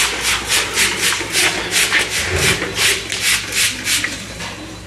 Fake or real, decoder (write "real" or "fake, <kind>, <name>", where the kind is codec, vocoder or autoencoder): real